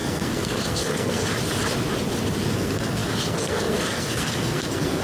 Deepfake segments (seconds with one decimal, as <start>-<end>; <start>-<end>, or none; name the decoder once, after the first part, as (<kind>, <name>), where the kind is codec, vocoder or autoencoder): 0.0-1.2 (codec, SNAC); 2.5-5.0